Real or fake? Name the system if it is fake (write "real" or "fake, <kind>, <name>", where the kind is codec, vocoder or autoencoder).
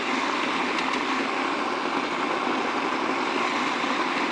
real